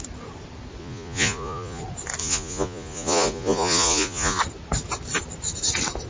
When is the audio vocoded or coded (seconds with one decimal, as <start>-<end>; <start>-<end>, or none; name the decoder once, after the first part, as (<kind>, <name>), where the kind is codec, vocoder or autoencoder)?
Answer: 0.8-1.8 (vocoder, Vocos); 2.2-4.4